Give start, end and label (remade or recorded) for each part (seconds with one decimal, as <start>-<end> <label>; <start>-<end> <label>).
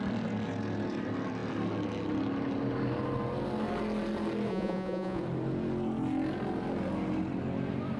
0.0-4.5 recorded; 4.5-5.2 remade; 5.2-8.0 recorded